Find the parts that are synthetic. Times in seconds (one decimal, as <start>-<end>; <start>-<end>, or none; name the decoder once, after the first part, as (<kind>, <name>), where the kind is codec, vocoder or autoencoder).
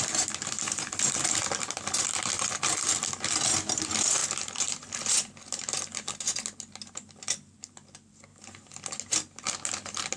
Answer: none